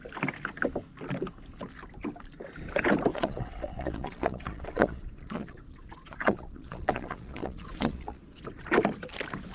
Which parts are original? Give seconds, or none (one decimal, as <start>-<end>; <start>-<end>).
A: 0.0-3.1; 8.4-9.5